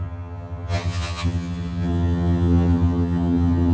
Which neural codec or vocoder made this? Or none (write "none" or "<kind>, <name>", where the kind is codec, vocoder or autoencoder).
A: vocoder, HiFi-GAN